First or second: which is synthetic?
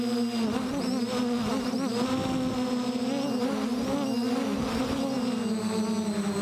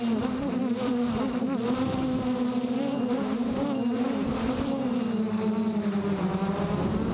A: second